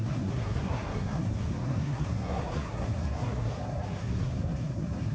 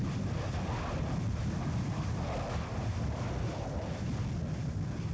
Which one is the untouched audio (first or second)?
second